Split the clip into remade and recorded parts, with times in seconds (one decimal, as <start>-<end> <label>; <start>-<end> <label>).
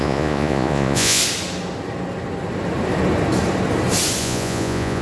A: 0.0-1.2 remade; 1.2-4.2 recorded; 4.2-5.0 remade